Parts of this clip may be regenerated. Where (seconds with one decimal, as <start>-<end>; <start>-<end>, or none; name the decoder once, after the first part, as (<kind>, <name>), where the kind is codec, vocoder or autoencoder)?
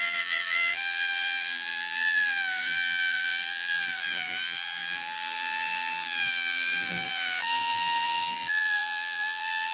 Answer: 0.0-9.7 (vocoder, BigVGAN v2)